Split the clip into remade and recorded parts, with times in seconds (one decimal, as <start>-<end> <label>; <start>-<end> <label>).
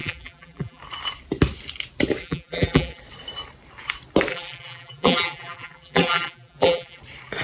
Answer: 0.0-0.8 remade; 0.8-2.2 recorded; 2.2-3.0 remade; 3.0-4.3 recorded; 4.3-7.0 remade; 7.0-7.4 recorded